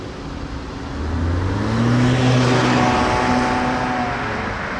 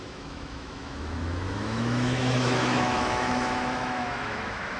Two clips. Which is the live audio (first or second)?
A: first